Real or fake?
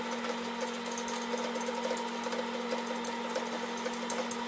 real